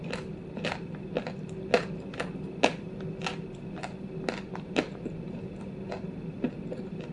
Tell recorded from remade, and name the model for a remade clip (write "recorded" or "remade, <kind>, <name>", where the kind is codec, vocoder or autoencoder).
recorded